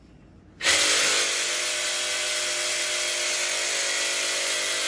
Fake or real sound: real